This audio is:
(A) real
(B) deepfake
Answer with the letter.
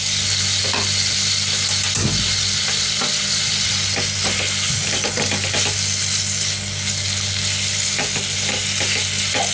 A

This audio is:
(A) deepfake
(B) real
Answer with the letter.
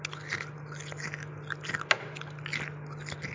B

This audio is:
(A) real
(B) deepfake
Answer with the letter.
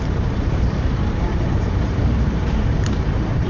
B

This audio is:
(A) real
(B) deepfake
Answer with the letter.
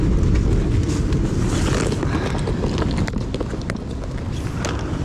A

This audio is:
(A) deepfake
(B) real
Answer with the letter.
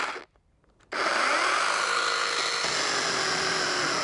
B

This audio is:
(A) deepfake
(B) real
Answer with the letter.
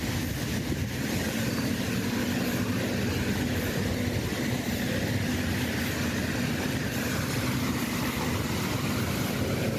B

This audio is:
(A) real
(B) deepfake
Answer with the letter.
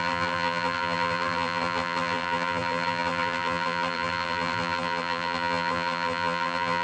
B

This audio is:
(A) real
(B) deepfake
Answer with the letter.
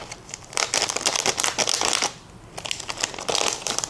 B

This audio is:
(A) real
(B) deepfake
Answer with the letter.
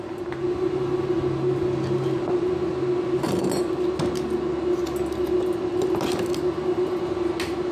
A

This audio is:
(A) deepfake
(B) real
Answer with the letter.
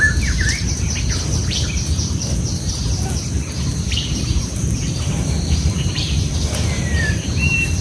A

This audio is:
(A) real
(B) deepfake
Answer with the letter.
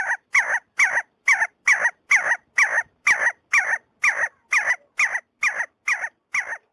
A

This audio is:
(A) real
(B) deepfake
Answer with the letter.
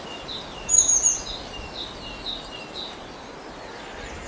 A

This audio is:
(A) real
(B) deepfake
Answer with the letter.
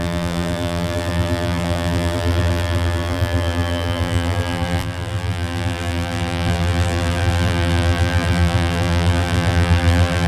B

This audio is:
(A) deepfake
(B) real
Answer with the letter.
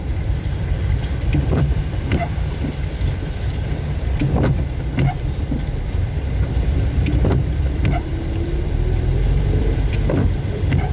A